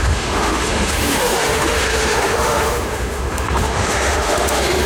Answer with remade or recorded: remade